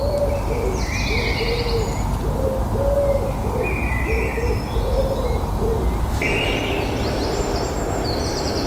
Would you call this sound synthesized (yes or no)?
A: no